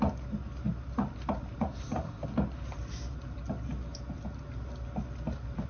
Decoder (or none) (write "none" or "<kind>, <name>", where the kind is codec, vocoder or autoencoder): none